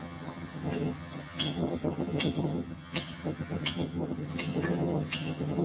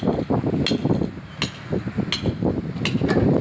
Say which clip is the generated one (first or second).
first